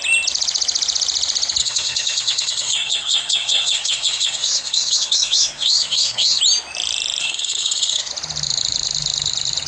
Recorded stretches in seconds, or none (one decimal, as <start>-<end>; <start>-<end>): 0.0-1.6; 6.4-7.2; 8.1-9.7